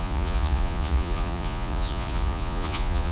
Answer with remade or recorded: remade